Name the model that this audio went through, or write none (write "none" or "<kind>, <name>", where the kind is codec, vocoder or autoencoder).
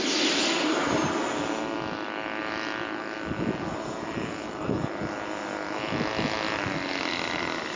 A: none